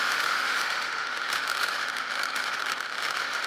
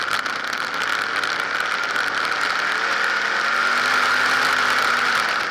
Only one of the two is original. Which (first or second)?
second